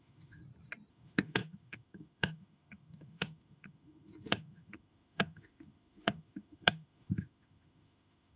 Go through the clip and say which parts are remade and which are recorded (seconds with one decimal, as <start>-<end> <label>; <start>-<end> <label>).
0.0-0.4 remade; 0.4-0.9 recorded; 0.9-8.4 remade